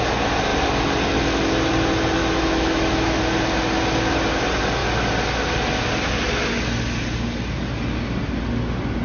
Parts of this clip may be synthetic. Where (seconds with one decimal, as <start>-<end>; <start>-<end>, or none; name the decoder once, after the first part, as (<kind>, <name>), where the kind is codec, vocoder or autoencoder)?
2.2-3.2 (autoencoder, DAC-VAE)